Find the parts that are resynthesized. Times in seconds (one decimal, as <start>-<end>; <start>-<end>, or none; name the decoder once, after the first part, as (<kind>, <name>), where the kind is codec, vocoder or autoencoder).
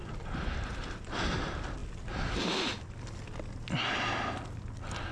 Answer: 0.0-1.2 (vocoder, BigVGAN v2)